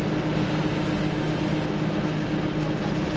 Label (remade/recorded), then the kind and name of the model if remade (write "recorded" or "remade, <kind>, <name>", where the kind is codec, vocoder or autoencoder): recorded